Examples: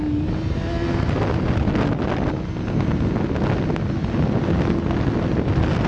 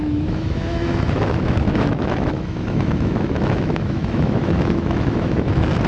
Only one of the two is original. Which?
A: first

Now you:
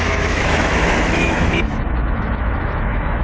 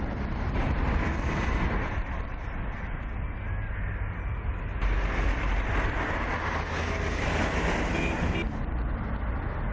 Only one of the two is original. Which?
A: second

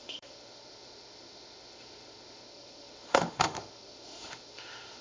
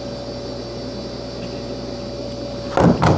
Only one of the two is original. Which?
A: second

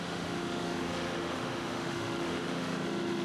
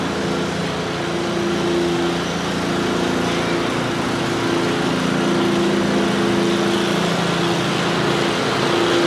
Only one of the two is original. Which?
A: second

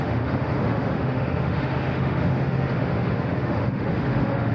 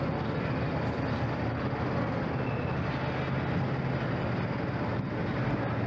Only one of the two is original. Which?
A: second